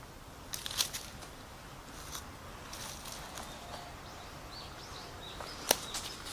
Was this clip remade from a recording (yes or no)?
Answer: no